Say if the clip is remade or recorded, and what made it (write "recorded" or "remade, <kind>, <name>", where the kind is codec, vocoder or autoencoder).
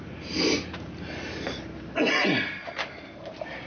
recorded